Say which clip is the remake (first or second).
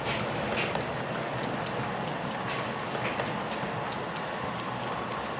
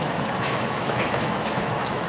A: second